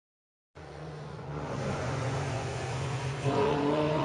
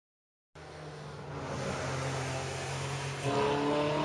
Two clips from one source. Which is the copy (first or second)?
first